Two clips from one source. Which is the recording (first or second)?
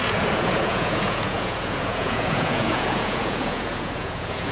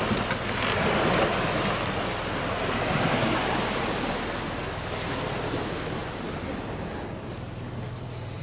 second